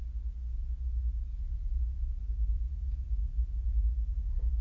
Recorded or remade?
recorded